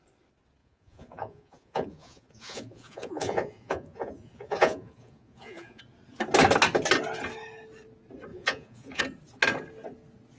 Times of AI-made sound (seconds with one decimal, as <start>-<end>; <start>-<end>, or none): 0.6-5.8; 8.3-9.0